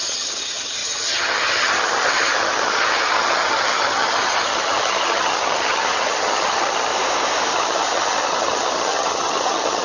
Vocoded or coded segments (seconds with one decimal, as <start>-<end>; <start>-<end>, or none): 0.0-6.9; 7.5-9.8

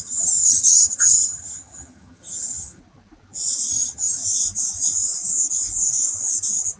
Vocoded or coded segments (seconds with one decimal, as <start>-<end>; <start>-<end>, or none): 0.0-2.8; 3.7-4.2